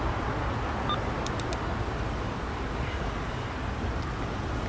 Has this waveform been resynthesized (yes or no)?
no